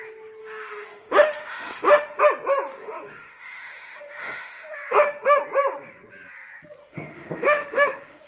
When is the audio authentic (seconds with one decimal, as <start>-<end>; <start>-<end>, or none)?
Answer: 0.0-0.4; 2.2-2.7; 5.4-6.8